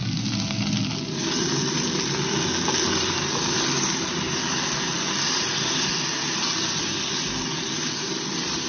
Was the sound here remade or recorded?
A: recorded